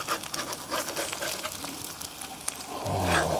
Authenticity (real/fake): real